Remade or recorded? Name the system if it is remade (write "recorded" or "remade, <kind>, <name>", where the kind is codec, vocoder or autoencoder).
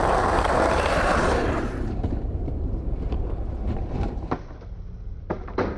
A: remade, vocoder, BigVGAN v2